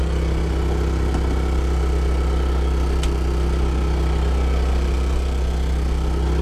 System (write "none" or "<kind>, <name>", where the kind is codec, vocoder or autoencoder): none